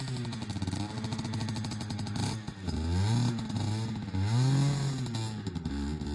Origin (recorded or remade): recorded